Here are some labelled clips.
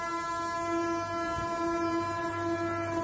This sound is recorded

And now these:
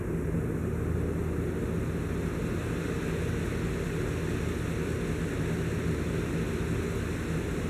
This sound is recorded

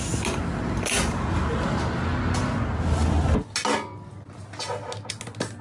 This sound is recorded